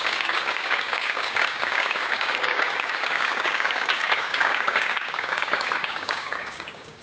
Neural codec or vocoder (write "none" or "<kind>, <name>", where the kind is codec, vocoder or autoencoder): codec, DAC